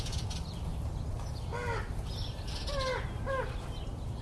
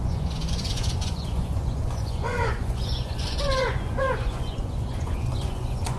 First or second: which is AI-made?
second